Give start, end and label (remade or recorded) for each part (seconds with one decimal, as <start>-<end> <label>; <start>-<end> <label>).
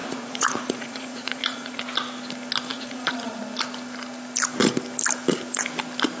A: 0.0-1.8 remade; 1.8-2.7 recorded; 2.7-3.4 remade; 3.4-6.2 recorded